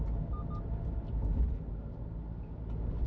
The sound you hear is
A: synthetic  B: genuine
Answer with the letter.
B